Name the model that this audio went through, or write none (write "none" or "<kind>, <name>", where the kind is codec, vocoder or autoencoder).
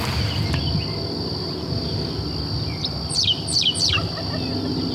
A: none